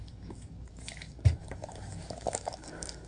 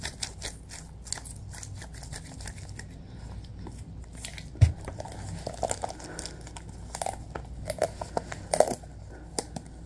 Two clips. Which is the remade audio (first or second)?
first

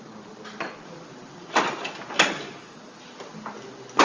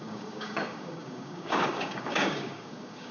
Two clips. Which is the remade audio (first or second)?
second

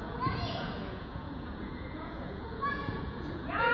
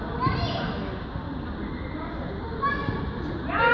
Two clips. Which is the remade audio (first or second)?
first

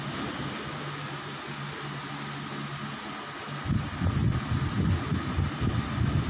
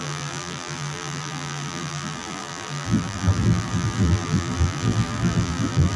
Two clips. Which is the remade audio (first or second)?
second